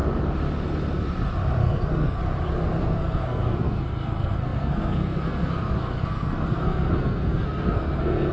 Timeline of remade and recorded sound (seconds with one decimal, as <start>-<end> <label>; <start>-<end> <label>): 0.0-1.6 recorded; 1.6-2.2 remade; 2.2-2.8 recorded; 2.8-8.3 remade